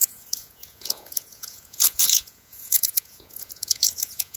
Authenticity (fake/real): fake